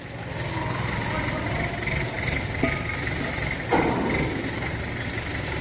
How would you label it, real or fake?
real